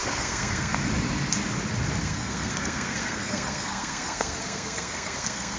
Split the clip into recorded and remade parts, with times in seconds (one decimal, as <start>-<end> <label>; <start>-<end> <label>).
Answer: 0.0-0.7 remade; 0.7-2.0 recorded; 2.0-5.6 remade